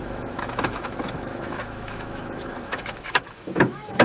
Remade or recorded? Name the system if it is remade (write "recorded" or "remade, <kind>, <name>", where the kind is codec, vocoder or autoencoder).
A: remade, autoencoder, DAC-VAE